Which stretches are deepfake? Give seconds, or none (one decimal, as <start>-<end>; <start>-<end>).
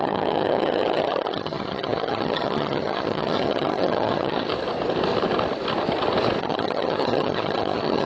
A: 0.0-4.5; 6.4-8.1